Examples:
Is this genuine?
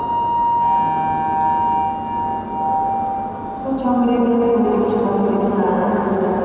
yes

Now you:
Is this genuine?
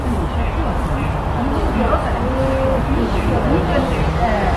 yes